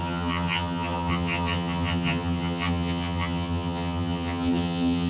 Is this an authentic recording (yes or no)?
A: no